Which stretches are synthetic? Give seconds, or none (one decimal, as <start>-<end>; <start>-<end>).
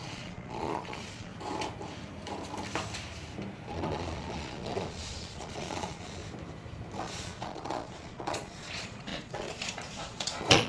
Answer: 0.0-1.3; 3.7-6.2; 7.0-10.7